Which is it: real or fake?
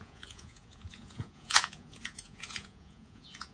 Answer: fake